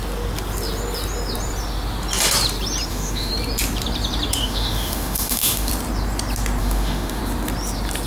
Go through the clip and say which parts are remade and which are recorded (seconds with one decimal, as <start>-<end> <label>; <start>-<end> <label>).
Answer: 0.0-2.9 recorded; 2.9-3.3 remade; 3.3-4.4 recorded; 4.4-5.7 remade; 5.7-6.6 recorded; 6.6-7.2 remade; 7.2-8.1 recorded